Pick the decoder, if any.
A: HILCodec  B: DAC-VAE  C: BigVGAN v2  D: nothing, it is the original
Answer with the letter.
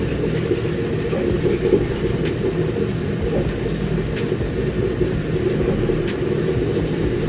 D